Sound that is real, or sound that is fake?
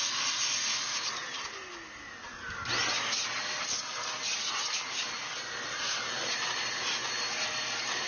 real